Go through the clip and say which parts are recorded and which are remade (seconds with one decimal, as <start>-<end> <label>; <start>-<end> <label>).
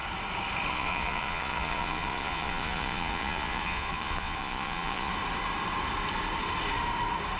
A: 0.0-0.7 recorded; 0.7-5.1 remade; 5.1-7.4 recorded